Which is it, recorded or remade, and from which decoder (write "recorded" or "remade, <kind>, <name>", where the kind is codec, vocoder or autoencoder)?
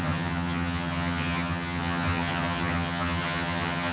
remade, vocoder, HiFi-GAN